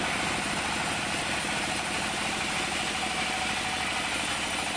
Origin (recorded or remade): recorded